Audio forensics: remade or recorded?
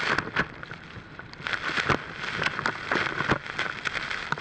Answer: recorded